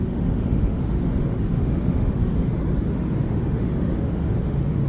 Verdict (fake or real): fake